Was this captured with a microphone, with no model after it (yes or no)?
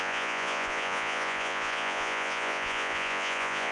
no